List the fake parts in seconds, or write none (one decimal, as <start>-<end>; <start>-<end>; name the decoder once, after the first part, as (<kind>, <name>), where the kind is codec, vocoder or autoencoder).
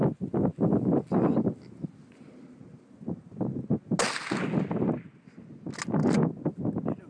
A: none